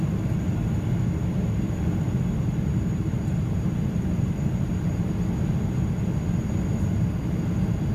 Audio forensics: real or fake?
real